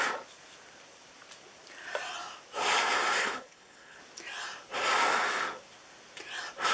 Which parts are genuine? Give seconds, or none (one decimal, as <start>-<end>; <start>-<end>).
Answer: 0.0-3.2; 4.0-6.7

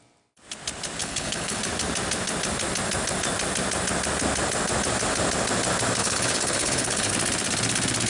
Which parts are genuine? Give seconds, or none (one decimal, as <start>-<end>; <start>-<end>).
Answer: 0.0-1.0; 1.6-6.0; 7.1-8.1